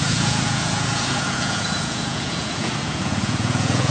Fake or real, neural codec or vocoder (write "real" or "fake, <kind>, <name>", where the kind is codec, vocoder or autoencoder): fake, vocoder, Vocos